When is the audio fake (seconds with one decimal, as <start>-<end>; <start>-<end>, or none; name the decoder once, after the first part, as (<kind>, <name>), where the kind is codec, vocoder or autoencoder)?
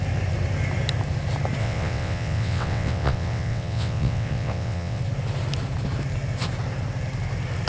1.6-5.0 (vocoder, WaveNeXt)